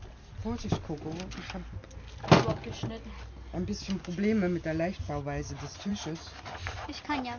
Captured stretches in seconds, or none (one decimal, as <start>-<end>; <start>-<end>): 0.0-5.9; 7.0-7.4